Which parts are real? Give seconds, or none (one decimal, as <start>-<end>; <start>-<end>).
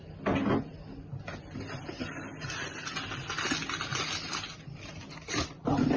0.0-6.0